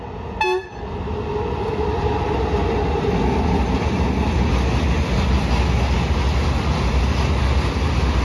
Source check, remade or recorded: recorded